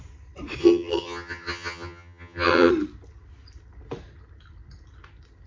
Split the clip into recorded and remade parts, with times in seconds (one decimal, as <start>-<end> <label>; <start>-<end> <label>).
0.0-0.6 recorded; 0.6-2.7 remade; 2.7-5.5 recorded